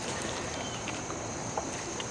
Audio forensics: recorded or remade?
remade